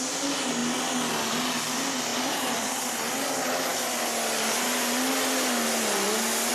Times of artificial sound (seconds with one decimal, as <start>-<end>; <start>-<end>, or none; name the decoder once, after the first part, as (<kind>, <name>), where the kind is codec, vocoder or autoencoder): 2.1-2.8 (vocoder, BigVGAN v2)